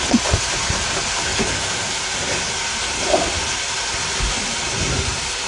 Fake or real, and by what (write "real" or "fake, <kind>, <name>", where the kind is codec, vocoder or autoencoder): real